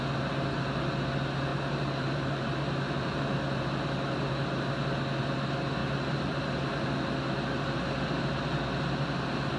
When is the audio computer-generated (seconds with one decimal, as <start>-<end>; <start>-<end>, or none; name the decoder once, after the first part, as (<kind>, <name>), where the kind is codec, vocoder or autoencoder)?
1.5-3.6 (vocoder, BigVGAN v2); 5.8-6.7